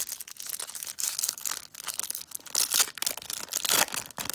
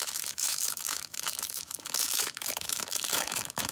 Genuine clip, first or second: first